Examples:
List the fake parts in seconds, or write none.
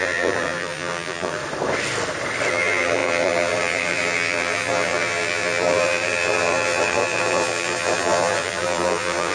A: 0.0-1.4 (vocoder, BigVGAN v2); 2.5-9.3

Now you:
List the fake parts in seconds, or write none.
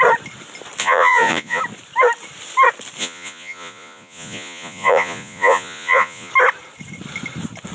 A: 0.8-1.6 (vocoder, Vocos); 3.0-6.3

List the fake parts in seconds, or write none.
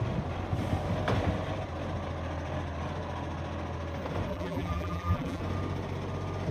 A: 4.3-5.4 (vocoder, BigVGAN v2)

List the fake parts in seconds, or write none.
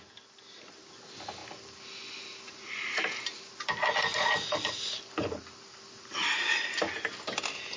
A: none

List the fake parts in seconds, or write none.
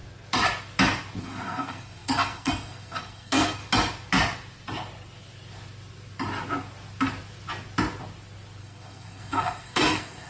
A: 1.2-3.6 (codec, SNAC); 8.6-10.3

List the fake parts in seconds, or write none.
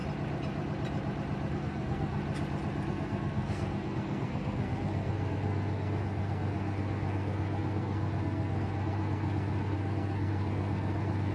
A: 1.5-2.2 (codec, SNAC); 2.9-11.3